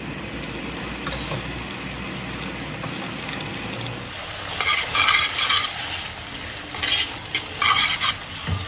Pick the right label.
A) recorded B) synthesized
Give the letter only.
A